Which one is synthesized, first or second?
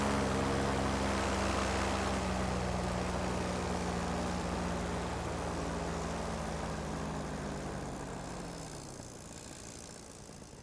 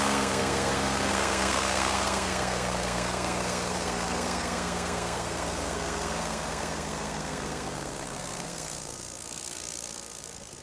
second